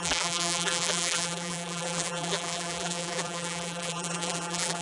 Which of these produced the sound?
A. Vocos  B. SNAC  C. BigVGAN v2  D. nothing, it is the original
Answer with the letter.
C